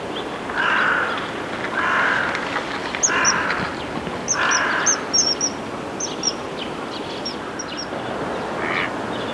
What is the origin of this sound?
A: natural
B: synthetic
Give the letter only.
A